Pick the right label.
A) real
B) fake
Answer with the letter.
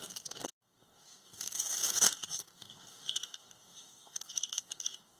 B